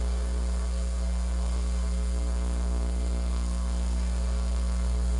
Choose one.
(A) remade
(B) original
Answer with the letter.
A